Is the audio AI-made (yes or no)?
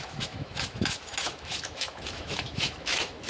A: yes